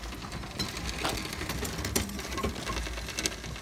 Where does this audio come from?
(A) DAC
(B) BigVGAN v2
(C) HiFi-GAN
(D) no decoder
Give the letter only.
D